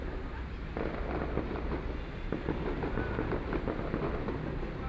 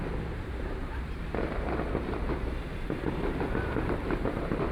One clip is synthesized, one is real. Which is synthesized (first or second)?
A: second